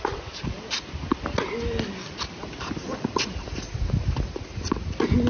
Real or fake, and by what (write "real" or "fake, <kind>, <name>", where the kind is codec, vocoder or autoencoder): real